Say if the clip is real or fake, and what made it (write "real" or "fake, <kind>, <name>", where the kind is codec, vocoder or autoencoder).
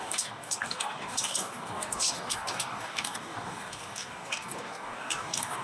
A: fake, codec, DAC